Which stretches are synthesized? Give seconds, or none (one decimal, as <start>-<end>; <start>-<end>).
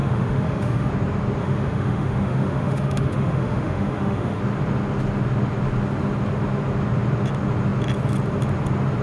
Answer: 0.0-0.9; 1.4-4.4